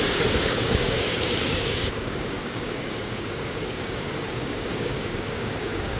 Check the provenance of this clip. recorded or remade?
remade